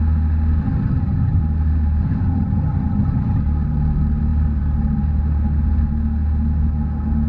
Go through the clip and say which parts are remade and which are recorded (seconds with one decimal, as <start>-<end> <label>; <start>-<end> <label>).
0.0-0.6 recorded; 0.6-1.4 remade; 1.4-2.0 recorded; 2.0-3.4 remade; 3.4-7.3 recorded